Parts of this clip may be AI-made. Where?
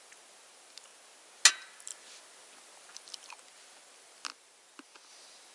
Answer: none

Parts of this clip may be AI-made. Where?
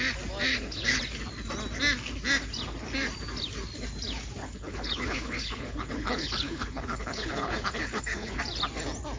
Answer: 0.5-1.0; 4.4-8.4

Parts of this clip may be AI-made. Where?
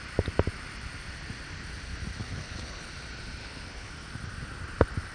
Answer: 2.2-2.9; 3.4-3.9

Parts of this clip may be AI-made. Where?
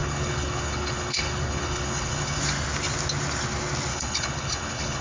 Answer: 0.0-2.4; 3.9-5.0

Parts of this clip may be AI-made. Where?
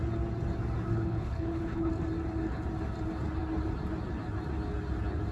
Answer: 0.9-1.9